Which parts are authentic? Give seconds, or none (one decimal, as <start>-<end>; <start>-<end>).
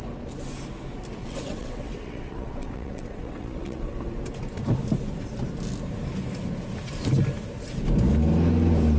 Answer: 0.0-1.2; 4.0-9.0